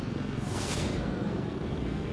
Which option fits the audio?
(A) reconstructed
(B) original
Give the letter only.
A